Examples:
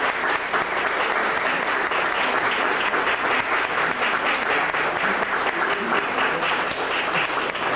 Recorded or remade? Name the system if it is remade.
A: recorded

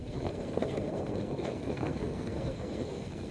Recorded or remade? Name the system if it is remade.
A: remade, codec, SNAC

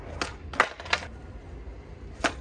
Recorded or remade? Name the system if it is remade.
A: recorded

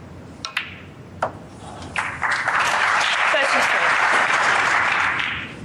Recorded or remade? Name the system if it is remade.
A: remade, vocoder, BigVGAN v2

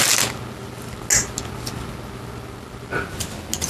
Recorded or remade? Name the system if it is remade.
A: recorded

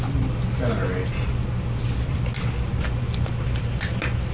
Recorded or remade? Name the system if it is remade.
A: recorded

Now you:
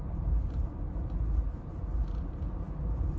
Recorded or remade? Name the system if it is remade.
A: remade, vocoder, BigVGAN v2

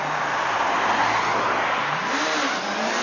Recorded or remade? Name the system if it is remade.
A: recorded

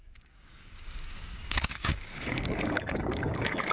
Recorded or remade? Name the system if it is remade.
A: remade, codec, DAC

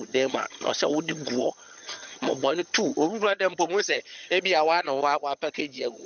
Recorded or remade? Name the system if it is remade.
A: remade, vocoder, HiFi-GAN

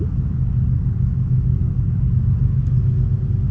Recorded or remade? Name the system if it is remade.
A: recorded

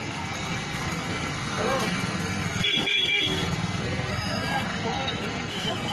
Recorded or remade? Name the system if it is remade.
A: remade, codec, SNAC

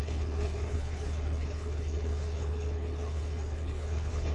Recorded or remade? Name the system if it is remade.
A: remade, codec, HILCodec